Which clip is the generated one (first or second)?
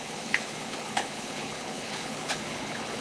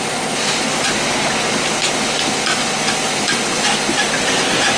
first